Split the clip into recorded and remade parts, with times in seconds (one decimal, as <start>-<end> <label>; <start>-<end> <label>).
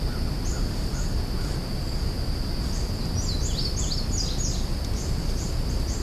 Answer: 0.0-6.0 recorded